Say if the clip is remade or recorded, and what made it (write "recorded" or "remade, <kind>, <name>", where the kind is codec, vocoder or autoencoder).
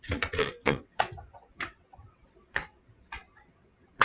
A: remade, vocoder, WaveNeXt